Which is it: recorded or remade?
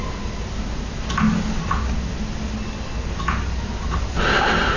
recorded